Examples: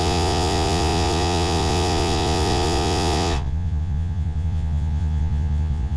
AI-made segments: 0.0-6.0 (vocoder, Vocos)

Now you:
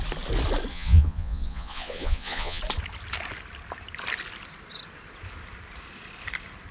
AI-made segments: 0.7-2.6 (vocoder, Vocos)

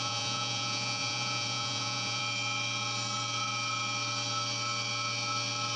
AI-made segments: 0.0-2.2 (vocoder, Vocos)

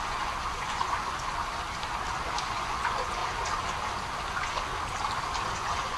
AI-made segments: 0.0-1.4 (vocoder, Vocos); 2.4-3.2; 4.3-4.7; 5.5-6.0